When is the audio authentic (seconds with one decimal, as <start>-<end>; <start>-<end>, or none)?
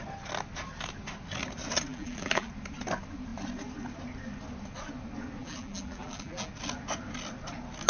0.0-1.9; 2.5-5.4; 6.5-7.9